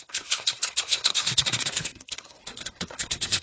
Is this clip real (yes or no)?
no